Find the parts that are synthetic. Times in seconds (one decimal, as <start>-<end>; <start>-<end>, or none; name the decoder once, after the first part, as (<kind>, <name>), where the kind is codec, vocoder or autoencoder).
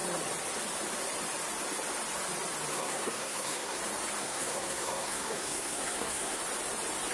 2.7-3.8 (codec, SNAC); 4.2-6.4